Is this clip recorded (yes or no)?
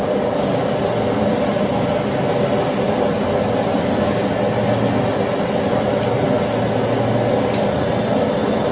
yes